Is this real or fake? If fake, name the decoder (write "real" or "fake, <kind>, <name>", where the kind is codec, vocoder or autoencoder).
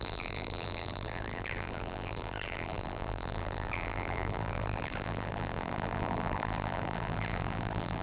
fake, vocoder, BigVGAN v2